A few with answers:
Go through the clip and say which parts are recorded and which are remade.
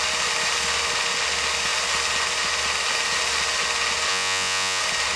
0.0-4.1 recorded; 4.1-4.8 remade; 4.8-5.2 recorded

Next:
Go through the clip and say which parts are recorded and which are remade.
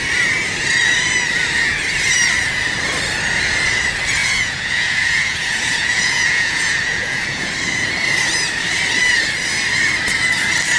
0.0-4.2 recorded; 4.2-7.5 remade; 7.5-10.8 recorded